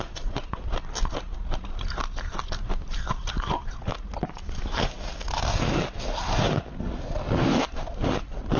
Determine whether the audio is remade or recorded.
recorded